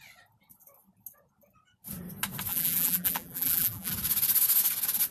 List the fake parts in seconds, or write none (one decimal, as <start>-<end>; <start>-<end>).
2.5-3.9